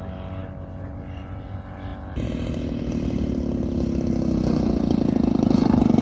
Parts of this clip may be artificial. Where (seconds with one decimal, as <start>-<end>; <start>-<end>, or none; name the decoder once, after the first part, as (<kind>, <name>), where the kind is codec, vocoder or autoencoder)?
none